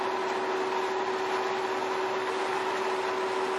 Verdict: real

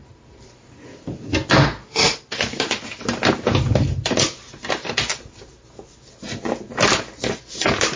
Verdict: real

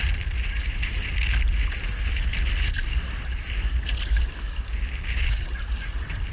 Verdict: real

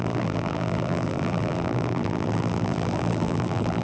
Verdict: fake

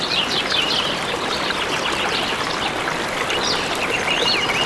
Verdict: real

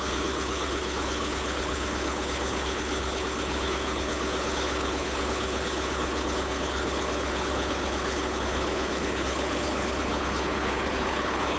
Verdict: fake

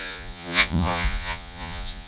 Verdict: fake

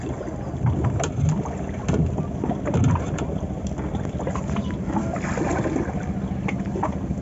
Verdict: real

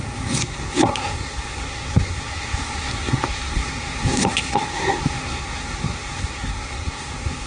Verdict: fake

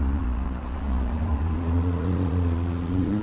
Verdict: fake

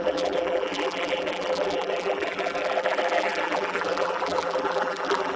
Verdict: fake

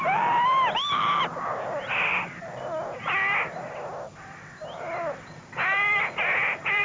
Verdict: fake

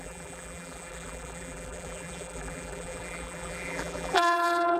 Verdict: fake